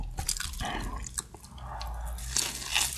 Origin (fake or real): real